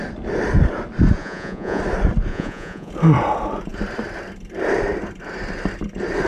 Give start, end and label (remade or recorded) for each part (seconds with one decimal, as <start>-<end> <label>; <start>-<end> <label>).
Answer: 0.0-1.2 recorded; 1.2-1.8 remade; 1.8-2.3 recorded; 2.3-2.9 remade; 2.9-6.3 recorded